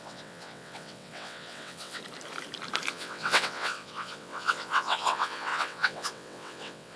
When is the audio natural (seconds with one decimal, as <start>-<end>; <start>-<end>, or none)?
2.0-2.9